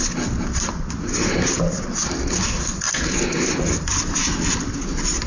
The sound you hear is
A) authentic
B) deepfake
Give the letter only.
A